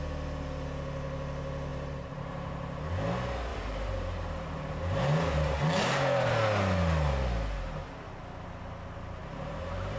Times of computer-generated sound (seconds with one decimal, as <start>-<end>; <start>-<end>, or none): 1.7-2.8; 3.5-6.0; 9.2-10.0